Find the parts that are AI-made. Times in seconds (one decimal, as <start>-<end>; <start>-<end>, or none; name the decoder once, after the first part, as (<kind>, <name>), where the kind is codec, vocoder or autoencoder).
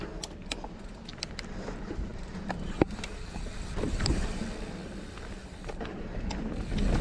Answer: 2.1-4.4 (vocoder, BigVGAN v2); 5.4-6.3